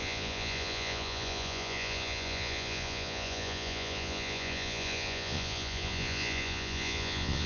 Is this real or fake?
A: fake